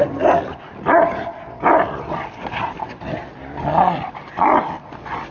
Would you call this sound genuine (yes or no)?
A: yes